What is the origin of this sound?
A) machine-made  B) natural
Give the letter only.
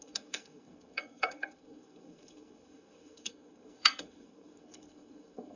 A